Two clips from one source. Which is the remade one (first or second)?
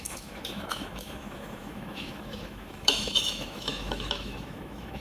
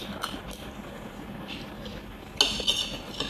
first